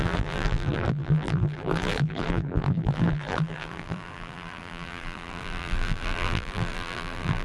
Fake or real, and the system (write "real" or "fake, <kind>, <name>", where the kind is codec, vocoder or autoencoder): fake, vocoder, BigVGAN v2